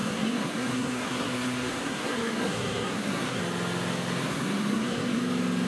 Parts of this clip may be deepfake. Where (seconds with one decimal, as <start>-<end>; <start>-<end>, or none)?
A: 0.0-3.4; 4.2-5.2

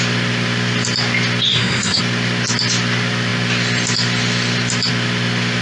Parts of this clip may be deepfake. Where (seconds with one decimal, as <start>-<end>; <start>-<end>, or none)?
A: 1.5-2.0

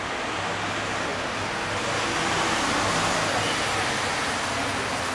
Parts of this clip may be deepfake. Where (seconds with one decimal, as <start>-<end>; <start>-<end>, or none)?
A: none

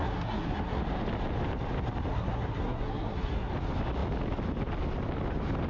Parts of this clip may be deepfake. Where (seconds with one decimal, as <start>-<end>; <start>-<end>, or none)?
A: 0.0-0.8; 2.1-3.5